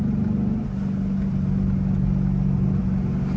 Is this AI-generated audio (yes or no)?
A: no